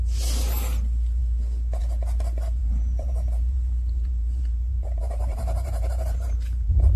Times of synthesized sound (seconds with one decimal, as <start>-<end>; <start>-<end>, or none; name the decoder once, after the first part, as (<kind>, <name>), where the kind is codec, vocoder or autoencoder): 2.6-7.0 (vocoder, BigVGAN v2)